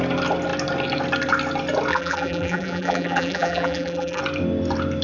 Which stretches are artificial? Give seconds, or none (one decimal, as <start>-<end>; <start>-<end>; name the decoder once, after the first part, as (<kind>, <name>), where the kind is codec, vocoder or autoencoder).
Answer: 1.9-4.2 (vocoder, BigVGAN v2)